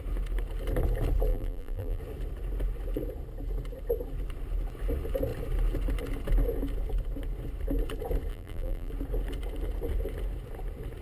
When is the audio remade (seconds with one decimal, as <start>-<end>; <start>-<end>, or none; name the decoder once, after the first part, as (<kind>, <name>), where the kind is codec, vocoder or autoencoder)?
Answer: 1.3-2.0 (vocoder, BigVGAN v2); 8.3-8.9